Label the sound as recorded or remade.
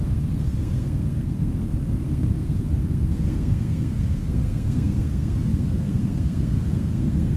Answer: remade